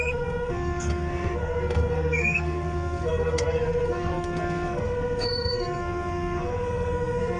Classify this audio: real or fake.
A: fake